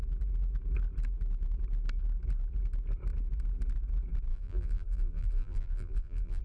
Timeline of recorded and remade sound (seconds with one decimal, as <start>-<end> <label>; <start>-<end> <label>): 0.0-4.3 recorded; 4.3-6.4 remade